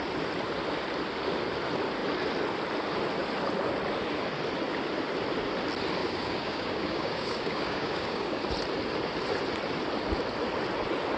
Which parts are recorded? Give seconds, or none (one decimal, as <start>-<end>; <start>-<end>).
0.0-6.0; 8.4-11.2